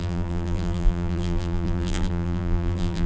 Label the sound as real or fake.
fake